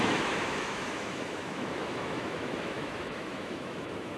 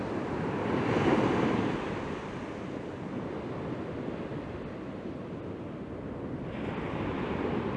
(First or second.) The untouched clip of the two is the second